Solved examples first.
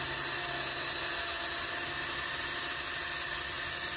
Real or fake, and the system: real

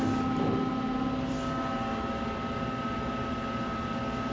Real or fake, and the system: real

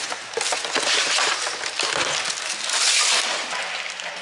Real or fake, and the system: real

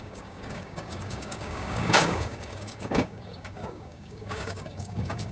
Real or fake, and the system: fake, codec, DAC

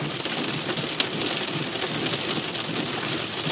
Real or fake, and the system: real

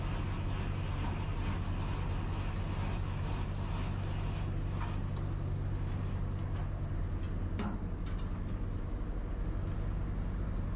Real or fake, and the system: real